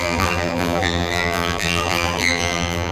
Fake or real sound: fake